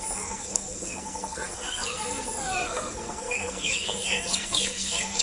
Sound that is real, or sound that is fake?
fake